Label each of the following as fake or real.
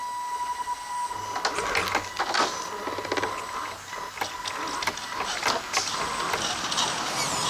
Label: real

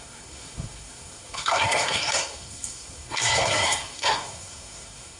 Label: fake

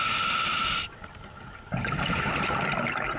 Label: fake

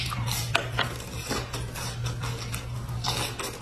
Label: real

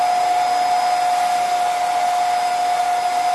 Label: real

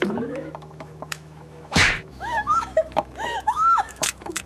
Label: fake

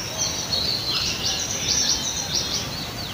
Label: real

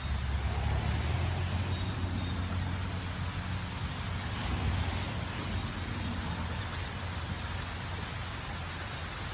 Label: real